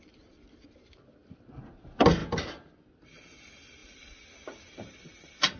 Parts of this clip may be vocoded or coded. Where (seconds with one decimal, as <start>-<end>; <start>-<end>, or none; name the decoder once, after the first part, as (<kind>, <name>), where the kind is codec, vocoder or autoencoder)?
none